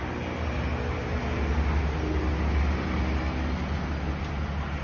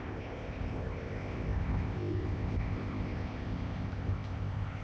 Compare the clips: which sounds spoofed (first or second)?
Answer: second